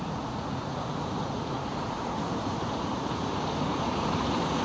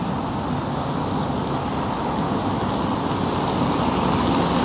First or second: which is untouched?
second